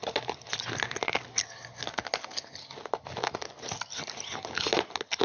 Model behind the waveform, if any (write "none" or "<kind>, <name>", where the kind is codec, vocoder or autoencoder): none